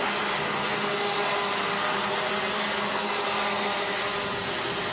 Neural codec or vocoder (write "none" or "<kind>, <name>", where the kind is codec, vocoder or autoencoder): none